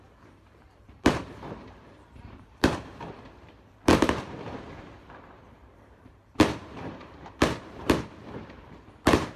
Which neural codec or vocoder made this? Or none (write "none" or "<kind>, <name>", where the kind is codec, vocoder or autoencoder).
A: vocoder, BigVGAN v2